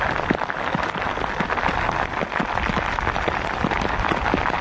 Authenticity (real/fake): real